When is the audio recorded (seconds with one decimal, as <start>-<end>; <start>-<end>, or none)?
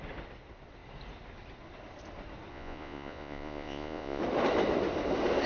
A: 0.0-2.5; 4.2-5.5